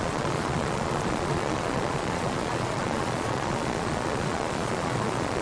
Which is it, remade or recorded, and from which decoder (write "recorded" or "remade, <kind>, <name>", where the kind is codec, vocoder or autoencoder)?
remade, vocoder, Vocos